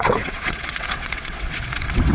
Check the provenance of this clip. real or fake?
fake